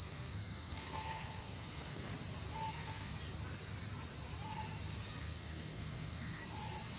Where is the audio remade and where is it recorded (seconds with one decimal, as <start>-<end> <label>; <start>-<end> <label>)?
0.0-2.1 remade; 2.1-2.7 recorded; 2.7-3.1 remade; 3.1-5.2 recorded; 5.2-6.4 remade; 6.4-7.0 recorded